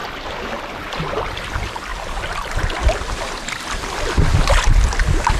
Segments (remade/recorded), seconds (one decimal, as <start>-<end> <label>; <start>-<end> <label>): 0.0-5.4 recorded